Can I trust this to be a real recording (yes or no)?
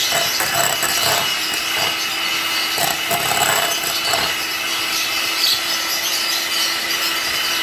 yes